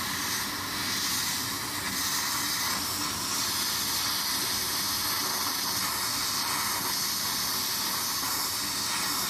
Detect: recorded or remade recorded